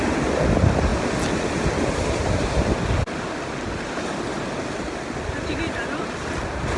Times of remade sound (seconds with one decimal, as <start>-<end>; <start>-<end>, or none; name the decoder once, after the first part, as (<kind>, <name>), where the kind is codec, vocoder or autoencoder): none